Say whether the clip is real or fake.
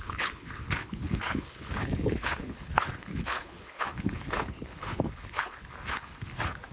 fake